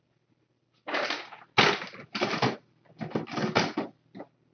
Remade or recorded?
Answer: recorded